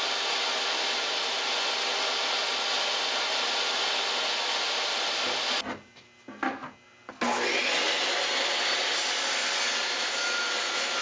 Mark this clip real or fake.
real